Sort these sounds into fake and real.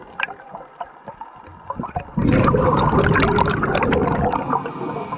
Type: real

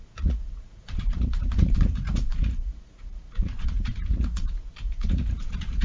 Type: fake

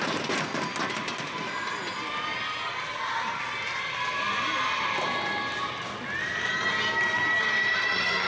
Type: real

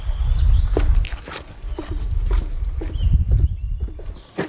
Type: real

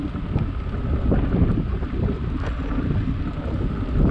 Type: real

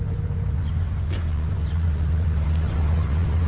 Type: fake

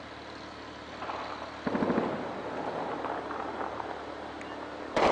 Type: real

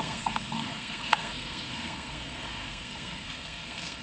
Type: fake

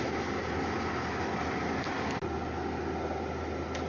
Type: real